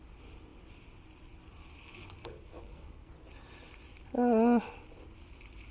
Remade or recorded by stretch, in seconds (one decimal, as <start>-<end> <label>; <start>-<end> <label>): 0.0-2.2 recorded; 2.2-3.1 remade; 3.1-5.7 recorded